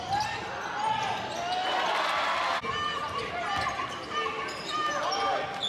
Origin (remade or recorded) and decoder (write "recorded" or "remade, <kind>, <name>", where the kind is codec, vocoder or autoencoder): recorded